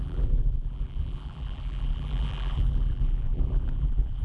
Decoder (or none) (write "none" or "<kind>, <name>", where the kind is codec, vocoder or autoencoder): vocoder, BigVGAN v2